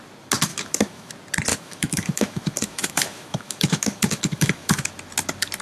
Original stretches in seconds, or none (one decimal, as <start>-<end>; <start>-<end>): 0.0-0.5; 1.1-1.5; 4.9-5.6